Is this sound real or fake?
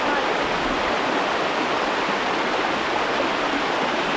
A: real